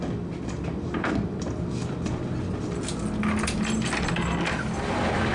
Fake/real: real